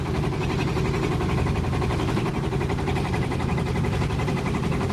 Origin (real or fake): fake